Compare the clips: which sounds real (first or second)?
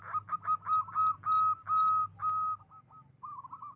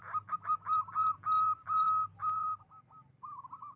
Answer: first